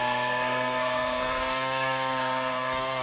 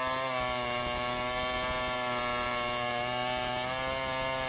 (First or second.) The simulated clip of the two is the first